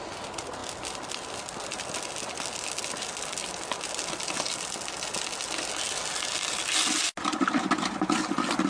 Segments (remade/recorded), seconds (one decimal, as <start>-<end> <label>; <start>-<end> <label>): 0.0-8.7 recorded